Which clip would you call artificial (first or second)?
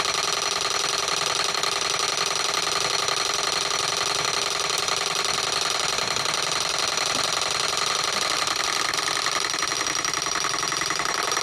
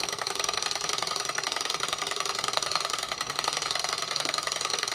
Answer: second